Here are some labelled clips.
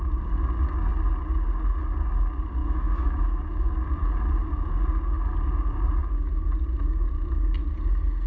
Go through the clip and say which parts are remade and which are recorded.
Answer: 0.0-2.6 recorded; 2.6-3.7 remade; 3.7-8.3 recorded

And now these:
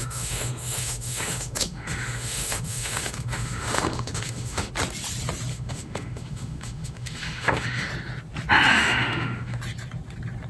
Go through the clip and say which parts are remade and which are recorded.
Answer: 0.0-4.7 remade; 4.7-5.5 recorded; 5.5-7.9 remade; 7.9-8.7 recorded; 8.7-9.6 remade; 9.6-10.5 recorded